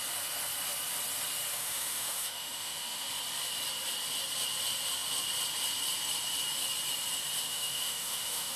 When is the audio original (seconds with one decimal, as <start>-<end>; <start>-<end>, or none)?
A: 0.0-1.5; 3.1-7.5